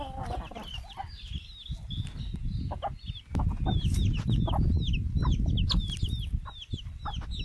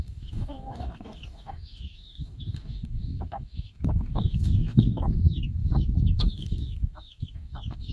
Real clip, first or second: first